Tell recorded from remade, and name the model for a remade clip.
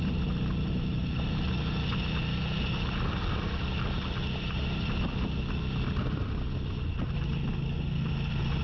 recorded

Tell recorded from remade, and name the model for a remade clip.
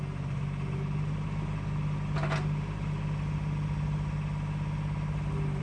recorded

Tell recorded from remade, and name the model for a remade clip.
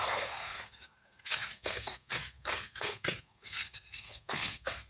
remade, codec, SNAC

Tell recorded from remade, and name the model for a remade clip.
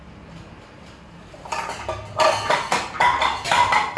recorded